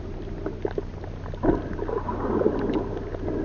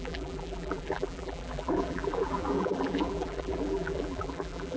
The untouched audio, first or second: first